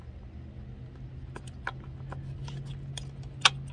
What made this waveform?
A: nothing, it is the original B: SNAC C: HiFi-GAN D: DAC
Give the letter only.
A